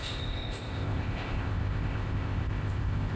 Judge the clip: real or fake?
fake